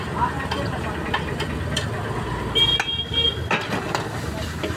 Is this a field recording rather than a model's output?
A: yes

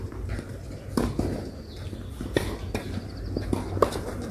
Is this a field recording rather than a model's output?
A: yes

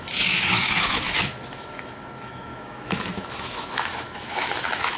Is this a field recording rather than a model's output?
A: no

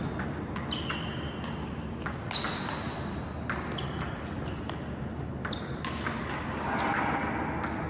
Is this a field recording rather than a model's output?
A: yes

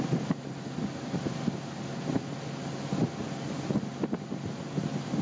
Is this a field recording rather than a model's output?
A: yes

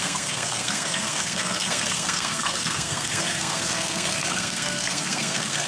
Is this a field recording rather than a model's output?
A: no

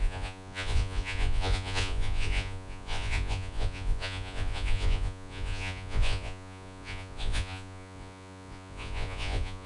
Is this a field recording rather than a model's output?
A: no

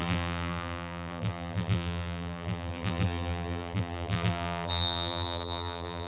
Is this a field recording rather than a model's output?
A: no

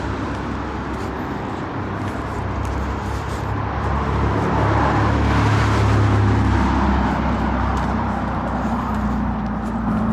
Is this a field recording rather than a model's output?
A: yes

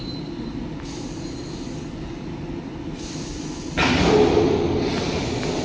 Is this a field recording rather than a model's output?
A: yes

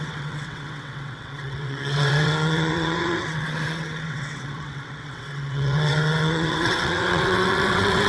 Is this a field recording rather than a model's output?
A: no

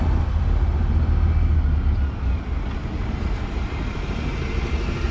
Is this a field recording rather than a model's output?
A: yes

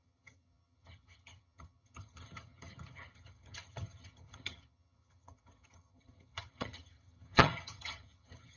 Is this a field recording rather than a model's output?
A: no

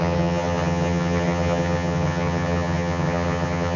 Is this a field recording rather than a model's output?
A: no